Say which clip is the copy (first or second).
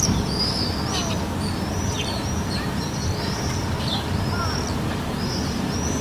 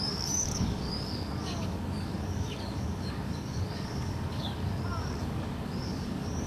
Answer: second